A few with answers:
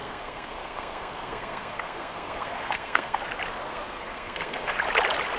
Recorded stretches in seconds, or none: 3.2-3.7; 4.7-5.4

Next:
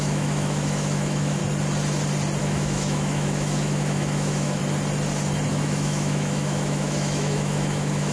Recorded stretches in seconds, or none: 1.4-2.4; 4.6-5.5